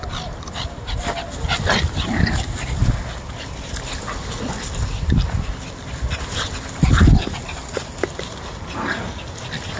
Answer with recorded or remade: recorded